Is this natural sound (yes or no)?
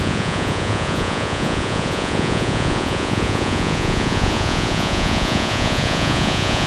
no